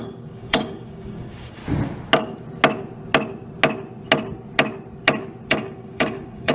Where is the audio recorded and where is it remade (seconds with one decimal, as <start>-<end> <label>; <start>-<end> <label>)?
0.0-1.6 remade; 1.6-5.5 recorded; 5.5-6.5 remade